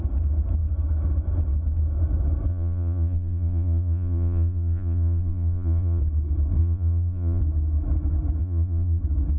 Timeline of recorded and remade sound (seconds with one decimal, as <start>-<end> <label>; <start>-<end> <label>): 0.0-2.5 recorded; 2.5-6.0 remade; 6.0-6.6 recorded; 6.6-7.4 remade; 7.4-8.4 recorded; 8.4-9.0 remade; 9.0-9.4 recorded